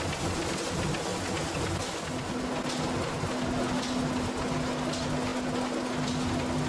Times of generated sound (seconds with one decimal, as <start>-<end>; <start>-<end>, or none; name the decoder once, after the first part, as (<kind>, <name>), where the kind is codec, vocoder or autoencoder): none